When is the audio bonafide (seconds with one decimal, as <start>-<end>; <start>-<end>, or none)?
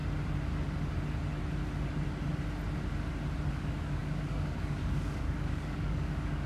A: 0.0-3.5